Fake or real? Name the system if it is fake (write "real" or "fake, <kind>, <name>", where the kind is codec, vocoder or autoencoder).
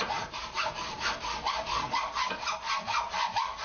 real